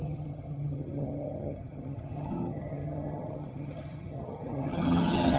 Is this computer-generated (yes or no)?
yes